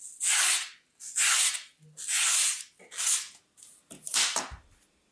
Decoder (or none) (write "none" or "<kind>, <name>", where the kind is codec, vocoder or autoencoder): none